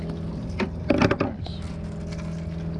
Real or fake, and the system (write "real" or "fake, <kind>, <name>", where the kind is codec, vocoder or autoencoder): real